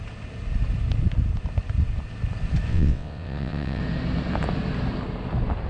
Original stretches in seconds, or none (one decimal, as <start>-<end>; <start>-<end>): 0.0-2.7; 3.8-5.7